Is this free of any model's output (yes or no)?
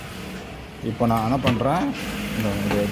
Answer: yes